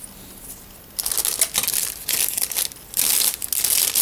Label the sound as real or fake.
real